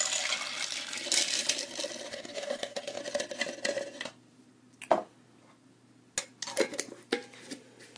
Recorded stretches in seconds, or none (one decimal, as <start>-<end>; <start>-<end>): 0.0-2.1; 3.0-8.0